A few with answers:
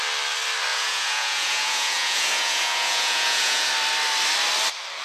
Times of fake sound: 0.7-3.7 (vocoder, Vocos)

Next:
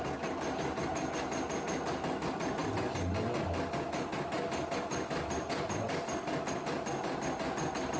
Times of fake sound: none